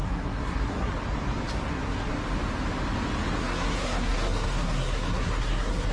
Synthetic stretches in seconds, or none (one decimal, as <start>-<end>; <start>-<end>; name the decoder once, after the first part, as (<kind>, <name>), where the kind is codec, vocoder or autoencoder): 0.0-0.9 (codec, SNAC); 1.7-2.1; 3.4-5.9